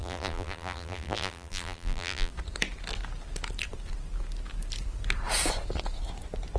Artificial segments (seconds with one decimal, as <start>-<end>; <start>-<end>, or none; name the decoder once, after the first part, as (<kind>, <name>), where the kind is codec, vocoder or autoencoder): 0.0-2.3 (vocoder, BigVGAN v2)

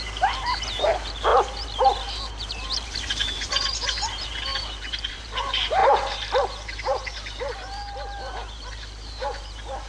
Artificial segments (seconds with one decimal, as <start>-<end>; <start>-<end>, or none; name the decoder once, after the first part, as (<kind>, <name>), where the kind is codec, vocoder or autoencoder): 0.0-9.9 (vocoder, BigVGAN v2)

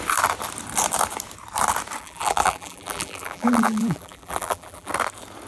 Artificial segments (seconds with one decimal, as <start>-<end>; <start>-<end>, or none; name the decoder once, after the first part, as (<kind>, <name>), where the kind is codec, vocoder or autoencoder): 2.0-4.9 (vocoder, BigVGAN v2)